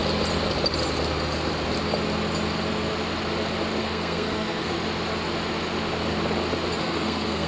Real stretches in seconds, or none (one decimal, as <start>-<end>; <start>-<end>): 0.0-3.8; 4.7-6.8